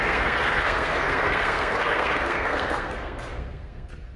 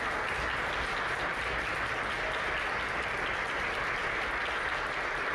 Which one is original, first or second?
second